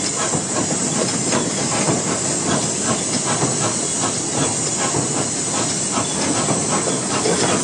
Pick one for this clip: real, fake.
real